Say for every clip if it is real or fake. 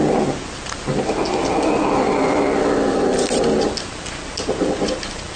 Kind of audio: real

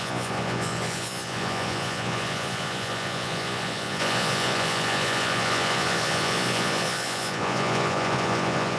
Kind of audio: fake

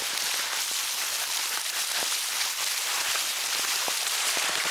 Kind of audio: real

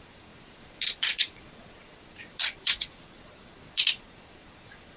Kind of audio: fake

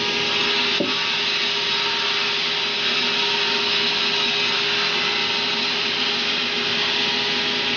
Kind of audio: real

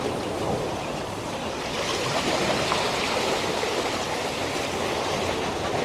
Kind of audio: real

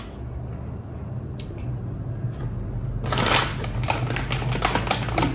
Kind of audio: real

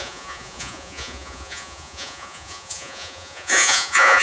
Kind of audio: fake